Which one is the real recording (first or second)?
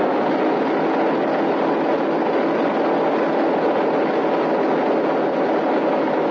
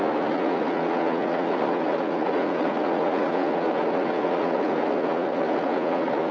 first